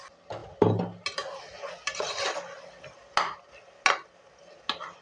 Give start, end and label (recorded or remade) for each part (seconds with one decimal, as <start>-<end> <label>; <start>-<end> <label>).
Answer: 0.0-5.0 recorded